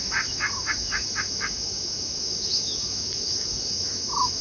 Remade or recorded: remade